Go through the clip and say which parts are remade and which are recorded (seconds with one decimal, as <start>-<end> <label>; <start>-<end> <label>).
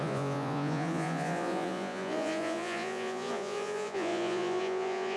0.0-5.2 remade